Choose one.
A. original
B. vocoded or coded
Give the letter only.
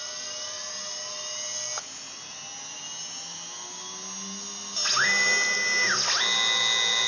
A